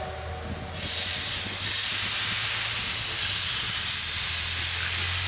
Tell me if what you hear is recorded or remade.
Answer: recorded